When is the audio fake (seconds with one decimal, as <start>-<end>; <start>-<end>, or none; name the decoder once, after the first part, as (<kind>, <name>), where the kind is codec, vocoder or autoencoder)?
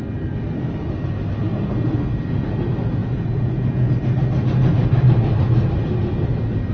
3.0-3.9 (vocoder, Vocos)